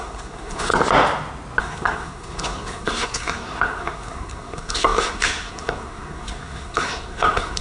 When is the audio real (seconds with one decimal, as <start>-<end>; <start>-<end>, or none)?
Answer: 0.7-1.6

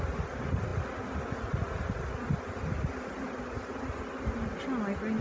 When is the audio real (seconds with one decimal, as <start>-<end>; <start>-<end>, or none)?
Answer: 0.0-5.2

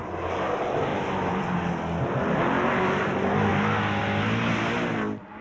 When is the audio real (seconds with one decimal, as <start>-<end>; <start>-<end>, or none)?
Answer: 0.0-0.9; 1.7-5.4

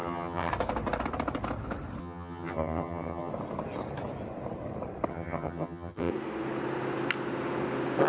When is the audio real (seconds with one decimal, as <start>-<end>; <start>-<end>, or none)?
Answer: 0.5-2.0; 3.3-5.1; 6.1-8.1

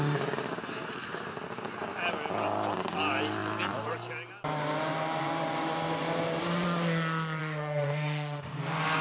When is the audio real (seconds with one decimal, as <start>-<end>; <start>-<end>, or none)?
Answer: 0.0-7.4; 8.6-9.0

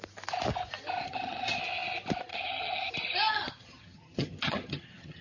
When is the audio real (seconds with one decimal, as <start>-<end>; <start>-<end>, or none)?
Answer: 0.0-1.0; 1.6-2.3; 2.9-3.3

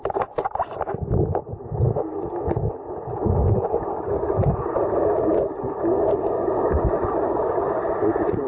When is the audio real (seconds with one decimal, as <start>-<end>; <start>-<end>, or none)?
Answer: 0.0-8.5

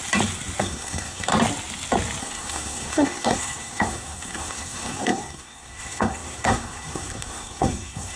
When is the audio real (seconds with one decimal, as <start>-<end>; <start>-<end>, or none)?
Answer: 0.0-0.6; 1.3-2.2